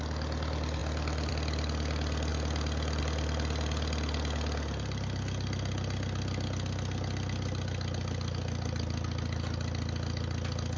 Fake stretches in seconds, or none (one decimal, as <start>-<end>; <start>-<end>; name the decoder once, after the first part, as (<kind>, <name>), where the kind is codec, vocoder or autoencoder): none